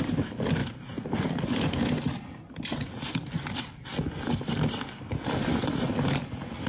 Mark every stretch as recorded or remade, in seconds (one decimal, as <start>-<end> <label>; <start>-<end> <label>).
0.0-6.7 recorded